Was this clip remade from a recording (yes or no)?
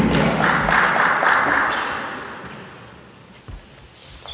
no